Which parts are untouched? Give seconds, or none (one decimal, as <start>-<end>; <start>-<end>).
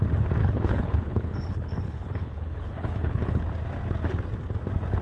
0.0-0.4; 3.4-5.0